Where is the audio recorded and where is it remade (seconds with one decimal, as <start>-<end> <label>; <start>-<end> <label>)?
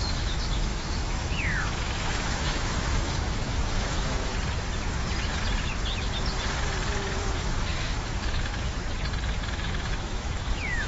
0.0-4.3 remade; 4.3-7.2 recorded; 7.2-8.8 remade; 8.8-9.4 recorded; 9.4-10.9 remade